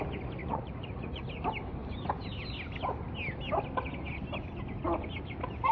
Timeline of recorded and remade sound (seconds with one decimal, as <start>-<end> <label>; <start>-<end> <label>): 0.0-0.4 recorded; 0.4-1.2 remade; 1.2-5.7 recorded